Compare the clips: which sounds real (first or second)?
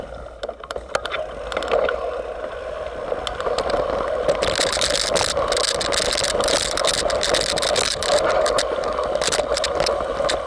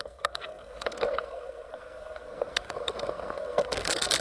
first